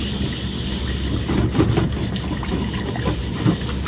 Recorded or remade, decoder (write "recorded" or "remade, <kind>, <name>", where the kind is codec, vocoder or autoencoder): recorded